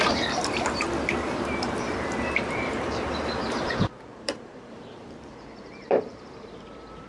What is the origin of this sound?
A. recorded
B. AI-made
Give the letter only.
B